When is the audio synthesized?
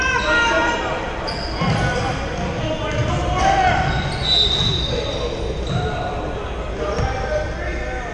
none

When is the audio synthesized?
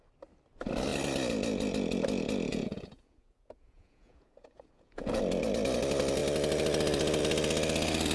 2.5-5.2 (vocoder, Vocos)